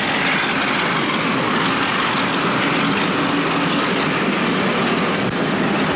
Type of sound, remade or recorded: recorded